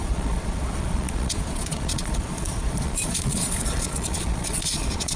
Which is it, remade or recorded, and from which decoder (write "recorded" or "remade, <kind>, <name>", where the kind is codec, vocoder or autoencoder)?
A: remade, vocoder, Vocos